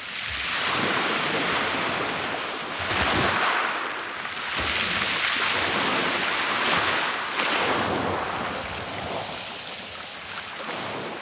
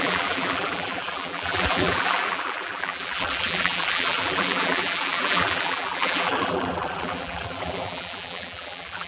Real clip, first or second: first